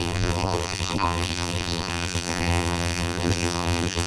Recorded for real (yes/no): no